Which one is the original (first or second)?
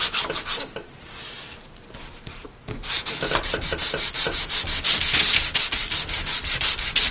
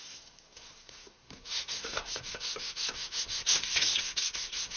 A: first